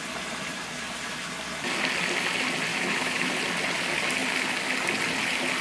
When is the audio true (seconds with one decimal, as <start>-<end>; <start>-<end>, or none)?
0.0-2.7; 3.3-5.6